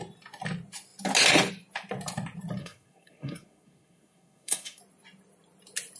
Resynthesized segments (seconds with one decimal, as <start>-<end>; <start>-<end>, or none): 2.6-4.8

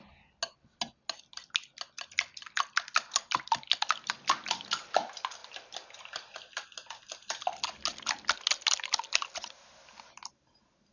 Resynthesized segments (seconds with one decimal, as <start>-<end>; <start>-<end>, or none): none

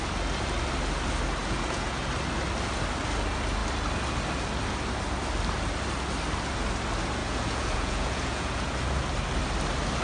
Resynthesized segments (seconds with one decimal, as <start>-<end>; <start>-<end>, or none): 1.4-2.0; 7.2-8.8

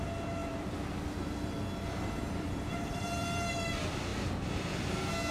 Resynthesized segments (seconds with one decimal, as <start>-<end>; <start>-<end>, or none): 0.4-3.6; 4.1-4.6

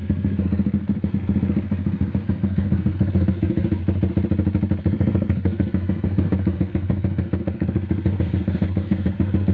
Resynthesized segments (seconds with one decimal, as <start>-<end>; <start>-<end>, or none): 0.0-3.8; 4.8-9.5

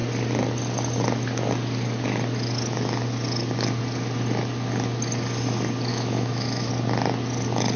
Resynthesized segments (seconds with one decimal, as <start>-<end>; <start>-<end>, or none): 5.9-6.7